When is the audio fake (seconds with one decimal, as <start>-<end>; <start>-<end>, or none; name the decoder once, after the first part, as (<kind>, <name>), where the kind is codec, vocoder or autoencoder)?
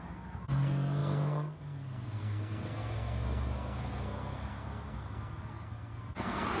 0.0-6.6 (codec, SNAC)